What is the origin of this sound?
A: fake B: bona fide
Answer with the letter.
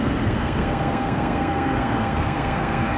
A